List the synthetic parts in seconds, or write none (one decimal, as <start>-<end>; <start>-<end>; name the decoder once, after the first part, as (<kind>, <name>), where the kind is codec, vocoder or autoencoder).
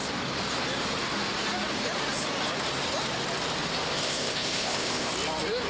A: 3.9-5.1 (codec, ZipCodec)